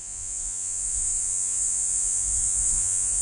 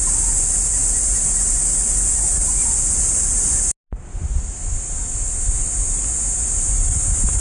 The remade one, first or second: first